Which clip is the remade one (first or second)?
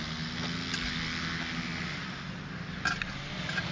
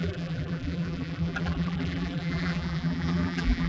second